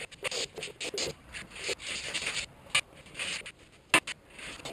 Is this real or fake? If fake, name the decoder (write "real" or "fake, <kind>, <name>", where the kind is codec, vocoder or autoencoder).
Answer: real